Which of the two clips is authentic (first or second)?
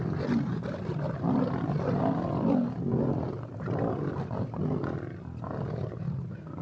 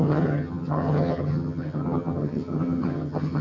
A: first